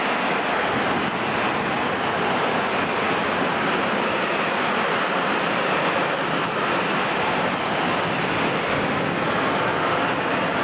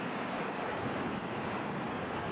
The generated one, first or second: second